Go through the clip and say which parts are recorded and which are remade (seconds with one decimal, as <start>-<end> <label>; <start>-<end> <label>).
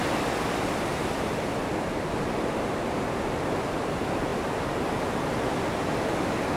0.0-6.6 recorded